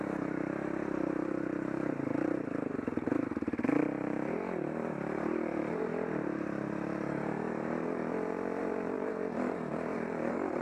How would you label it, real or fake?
fake